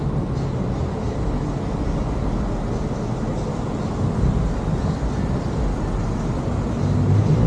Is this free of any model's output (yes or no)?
yes